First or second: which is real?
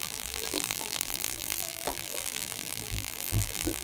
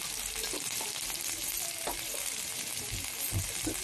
second